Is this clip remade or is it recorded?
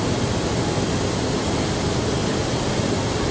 recorded